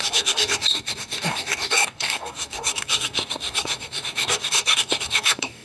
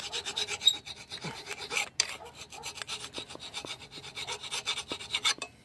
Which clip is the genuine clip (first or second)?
second